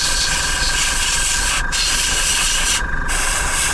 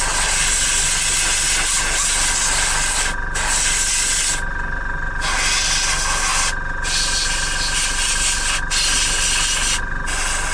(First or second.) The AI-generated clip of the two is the first